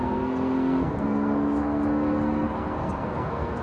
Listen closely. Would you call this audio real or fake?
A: fake